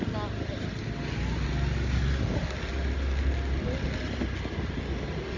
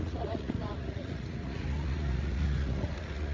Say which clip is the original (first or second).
first